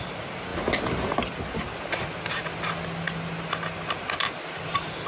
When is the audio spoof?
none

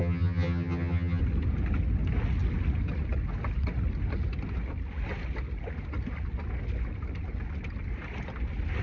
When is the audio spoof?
0.0-1.2 (vocoder, HiFi-GAN)

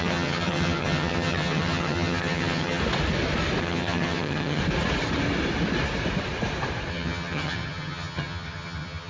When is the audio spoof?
0.0-2.8 (vocoder, HiFi-GAN); 3.6-4.6; 6.9-9.1

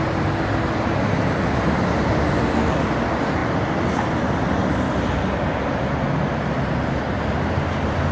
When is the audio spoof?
none

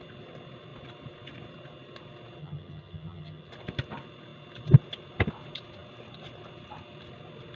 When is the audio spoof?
2.4-3.5 (vocoder, HiFi-GAN)

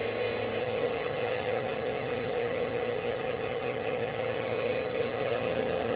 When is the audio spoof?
0.6-6.0 (vocoder, HiFi-GAN)

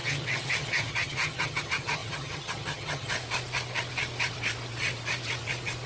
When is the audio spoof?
0.0-3.1 (vocoder, HiFi-GAN)

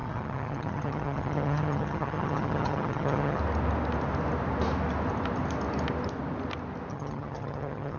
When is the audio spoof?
0.0-3.4 (vocoder, HiFi-GAN); 6.9-8.0